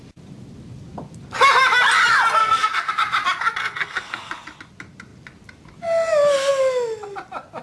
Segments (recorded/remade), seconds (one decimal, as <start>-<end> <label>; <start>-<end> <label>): 0.0-2.4 recorded; 2.4-2.9 remade; 2.9-3.6 recorded; 3.6-4.3 remade; 4.3-7.6 recorded